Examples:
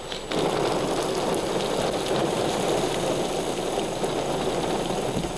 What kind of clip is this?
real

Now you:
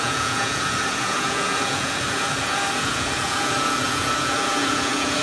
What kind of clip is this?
fake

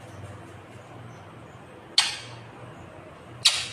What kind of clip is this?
real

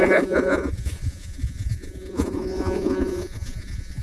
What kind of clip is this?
fake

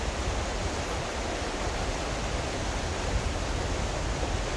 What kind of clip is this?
real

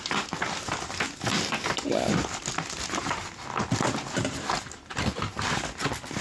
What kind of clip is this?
real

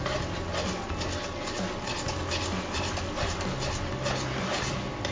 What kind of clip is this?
real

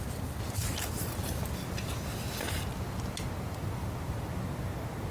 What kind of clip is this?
real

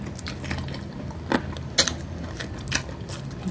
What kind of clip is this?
real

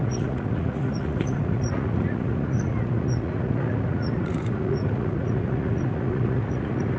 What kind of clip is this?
fake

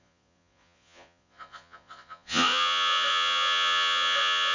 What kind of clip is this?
fake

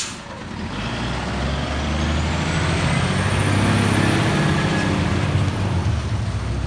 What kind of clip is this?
real